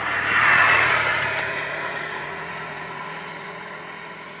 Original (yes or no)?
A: no